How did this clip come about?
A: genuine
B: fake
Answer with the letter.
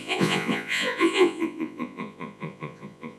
B